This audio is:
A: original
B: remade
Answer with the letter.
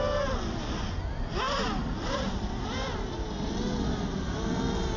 A